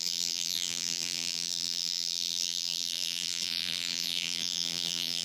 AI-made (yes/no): yes